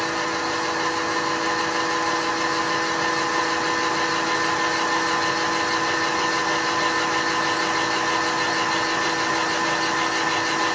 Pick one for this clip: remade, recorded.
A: recorded